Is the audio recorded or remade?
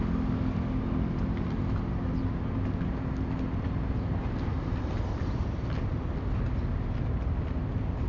recorded